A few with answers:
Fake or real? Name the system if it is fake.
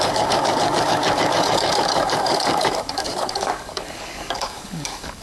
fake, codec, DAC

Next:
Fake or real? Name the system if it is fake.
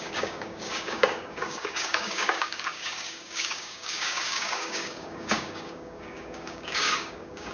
fake, codec, DAC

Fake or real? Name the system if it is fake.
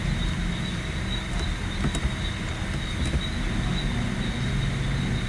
real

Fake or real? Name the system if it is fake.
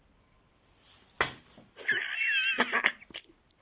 real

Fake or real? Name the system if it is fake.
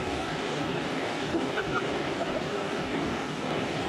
fake, codec, DAC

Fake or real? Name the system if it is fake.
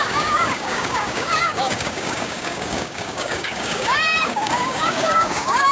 fake, codec, DAC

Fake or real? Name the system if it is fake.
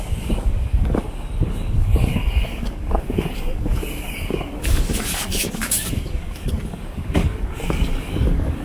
fake, codec, DAC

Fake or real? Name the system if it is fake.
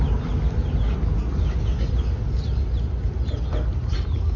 real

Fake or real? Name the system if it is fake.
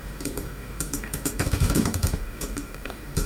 fake, codec, DAC